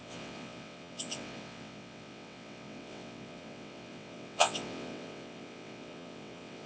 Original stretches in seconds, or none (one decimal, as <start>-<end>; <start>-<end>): none